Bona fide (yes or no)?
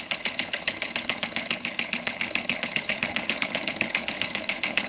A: no